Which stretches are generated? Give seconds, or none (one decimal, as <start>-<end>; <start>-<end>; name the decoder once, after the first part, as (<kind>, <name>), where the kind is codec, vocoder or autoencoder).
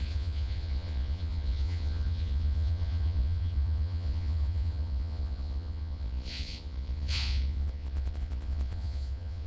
0.0-9.5 (vocoder, Vocos)